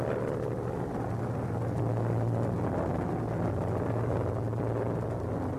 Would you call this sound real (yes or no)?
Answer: yes